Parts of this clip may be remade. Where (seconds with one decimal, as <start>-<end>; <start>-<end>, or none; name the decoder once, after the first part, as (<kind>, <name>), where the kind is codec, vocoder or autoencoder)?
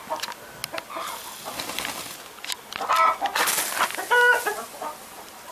none